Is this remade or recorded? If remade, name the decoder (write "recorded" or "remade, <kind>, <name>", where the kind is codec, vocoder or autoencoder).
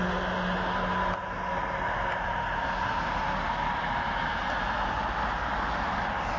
recorded